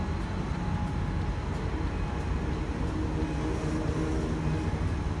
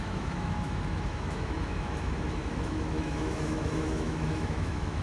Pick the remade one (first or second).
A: second